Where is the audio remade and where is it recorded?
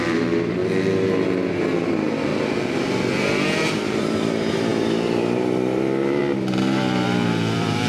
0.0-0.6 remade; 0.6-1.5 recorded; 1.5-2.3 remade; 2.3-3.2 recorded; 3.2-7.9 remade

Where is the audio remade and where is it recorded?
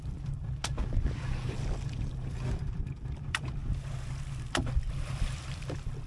0.0-0.6 remade; 0.6-1.7 recorded; 1.7-3.6 remade; 3.6-4.6 recorded; 4.6-6.1 remade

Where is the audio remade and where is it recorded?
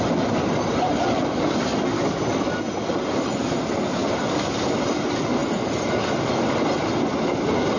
0.0-5.4 recorded; 5.4-5.9 remade; 5.9-7.8 recorded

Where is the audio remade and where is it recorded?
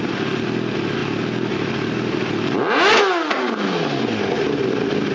0.0-5.1 recorded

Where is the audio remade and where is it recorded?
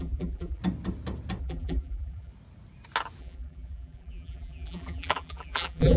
0.0-0.6 remade; 0.6-1.4 recorded; 1.4-2.3 remade; 2.3-3.2 recorded; 3.2-6.0 remade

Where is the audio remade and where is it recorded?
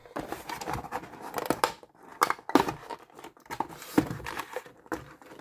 0.0-1.1 remade; 1.1-5.4 recorded